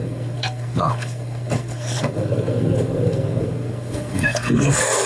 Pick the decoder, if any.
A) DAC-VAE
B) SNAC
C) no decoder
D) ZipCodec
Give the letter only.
B